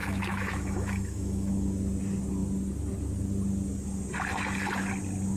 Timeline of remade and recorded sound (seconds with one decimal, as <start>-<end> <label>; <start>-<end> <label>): 0.0-1.5 remade; 1.5-5.4 recorded